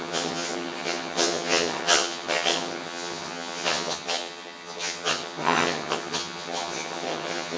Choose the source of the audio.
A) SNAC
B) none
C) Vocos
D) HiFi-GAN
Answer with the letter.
D